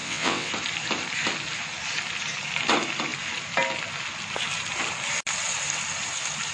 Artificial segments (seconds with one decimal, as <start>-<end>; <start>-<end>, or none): 0.0-0.5